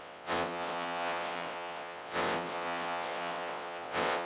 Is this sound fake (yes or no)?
yes